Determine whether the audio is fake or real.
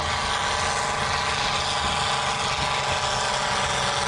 real